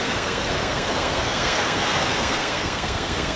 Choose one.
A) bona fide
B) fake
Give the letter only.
B